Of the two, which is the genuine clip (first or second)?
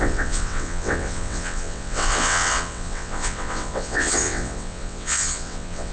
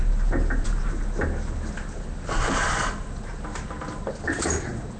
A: second